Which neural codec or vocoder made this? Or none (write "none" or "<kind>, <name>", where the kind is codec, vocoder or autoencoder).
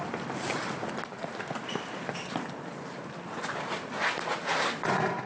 none